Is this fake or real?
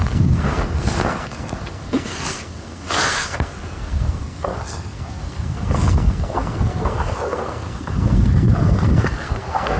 fake